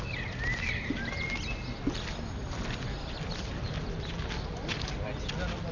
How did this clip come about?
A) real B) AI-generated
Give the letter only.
A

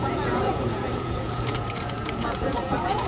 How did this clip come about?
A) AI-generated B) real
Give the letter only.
A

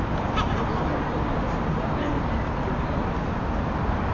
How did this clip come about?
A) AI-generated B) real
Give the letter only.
B